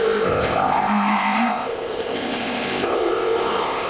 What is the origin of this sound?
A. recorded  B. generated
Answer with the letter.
B